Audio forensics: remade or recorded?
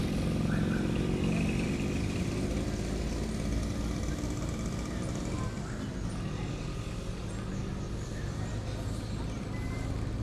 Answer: recorded